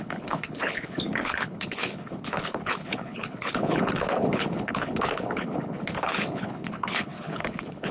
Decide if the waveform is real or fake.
fake